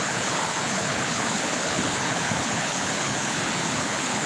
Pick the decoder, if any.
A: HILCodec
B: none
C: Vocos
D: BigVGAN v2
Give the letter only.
A